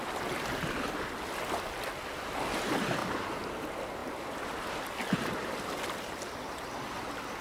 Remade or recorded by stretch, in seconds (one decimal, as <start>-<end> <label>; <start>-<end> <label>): 0.0-3.0 recorded; 3.0-3.6 remade; 3.6-7.4 recorded